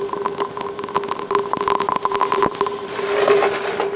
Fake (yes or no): no